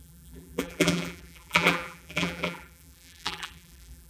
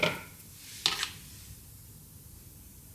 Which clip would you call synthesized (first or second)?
first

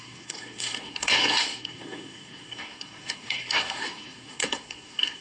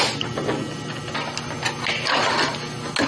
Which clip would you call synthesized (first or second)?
first